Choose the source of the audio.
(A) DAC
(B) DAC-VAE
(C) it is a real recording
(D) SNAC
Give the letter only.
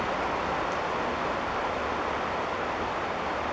C